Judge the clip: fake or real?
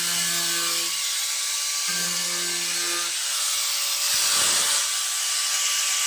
real